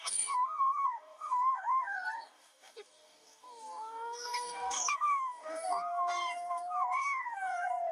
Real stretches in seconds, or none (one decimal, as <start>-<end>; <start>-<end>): none